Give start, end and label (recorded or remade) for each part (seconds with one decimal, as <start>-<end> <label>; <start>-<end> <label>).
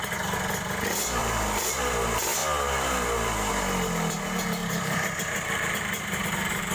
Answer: 0.0-1.2 recorded; 1.2-1.8 remade; 1.8-4.6 recorded; 4.6-6.7 remade